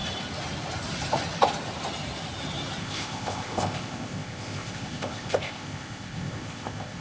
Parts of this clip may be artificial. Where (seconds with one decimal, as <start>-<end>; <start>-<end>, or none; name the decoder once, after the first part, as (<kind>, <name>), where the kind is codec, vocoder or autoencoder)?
2.8-7.0 (codec, ZipCodec)